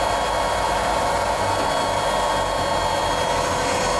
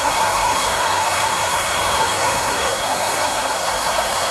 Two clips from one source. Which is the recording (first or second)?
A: first